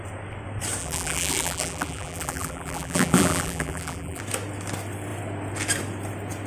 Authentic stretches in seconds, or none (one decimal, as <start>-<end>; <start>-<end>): 0.0-0.8; 4.2-6.5